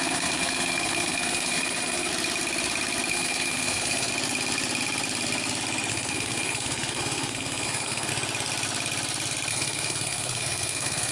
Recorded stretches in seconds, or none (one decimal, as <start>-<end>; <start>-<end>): 2.1-3.1; 4.1-5.9; 8.1-9.5